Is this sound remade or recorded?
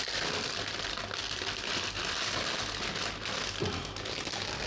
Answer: recorded